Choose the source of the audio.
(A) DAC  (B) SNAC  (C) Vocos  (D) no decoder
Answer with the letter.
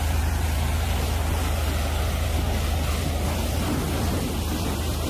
D